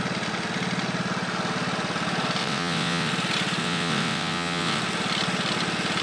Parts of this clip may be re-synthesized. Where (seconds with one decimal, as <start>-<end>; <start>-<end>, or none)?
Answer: 2.4-3.1; 3.6-4.8